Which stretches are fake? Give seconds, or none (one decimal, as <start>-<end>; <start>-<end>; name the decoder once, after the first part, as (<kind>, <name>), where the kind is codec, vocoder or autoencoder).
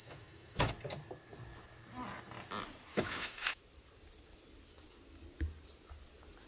0.0-0.7 (autoencoder, DAC-VAE); 2.9-3.6